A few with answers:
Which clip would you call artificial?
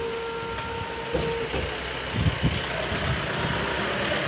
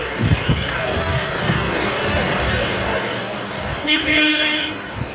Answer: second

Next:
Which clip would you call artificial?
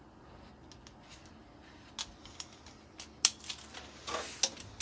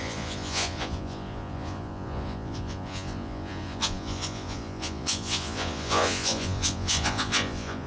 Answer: second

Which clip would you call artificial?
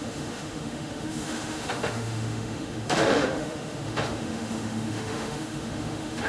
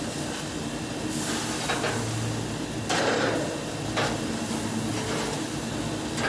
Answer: first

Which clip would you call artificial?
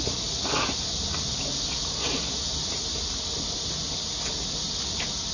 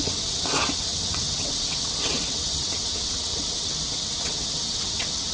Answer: second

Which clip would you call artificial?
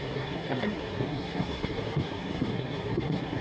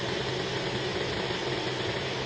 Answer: first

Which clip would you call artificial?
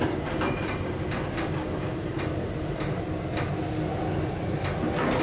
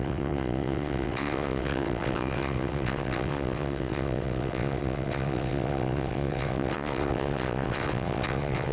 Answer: second